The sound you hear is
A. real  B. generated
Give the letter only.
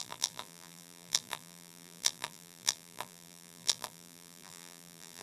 B